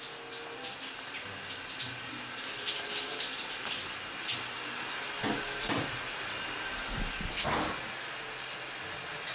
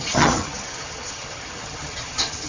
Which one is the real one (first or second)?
first